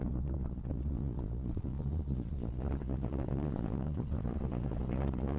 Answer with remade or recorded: remade